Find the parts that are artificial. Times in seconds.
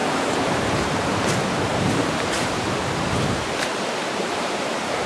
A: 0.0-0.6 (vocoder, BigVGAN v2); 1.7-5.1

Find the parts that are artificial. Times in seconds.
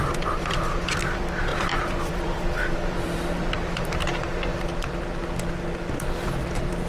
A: 0.0-4.7 (vocoder, BigVGAN v2); 5.9-6.9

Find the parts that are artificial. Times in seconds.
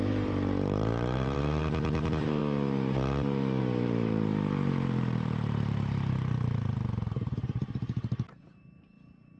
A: 0.0-2.4 (vocoder, BigVGAN v2); 3.6-9.4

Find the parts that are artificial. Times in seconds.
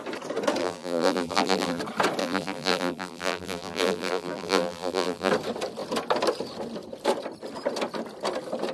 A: 0.6-1.8 (vocoder, BigVGAN v2); 2.2-5.3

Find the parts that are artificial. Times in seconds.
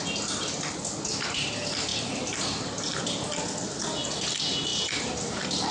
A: 1.9-3.0 (vocoder, BigVGAN v2); 4.7-5.3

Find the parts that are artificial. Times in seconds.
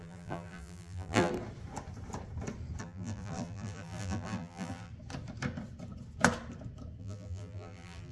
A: 0.0-1.3 (vocoder, BigVGAN v2); 2.8-4.9; 7.0-8.1